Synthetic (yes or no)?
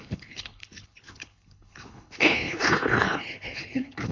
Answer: yes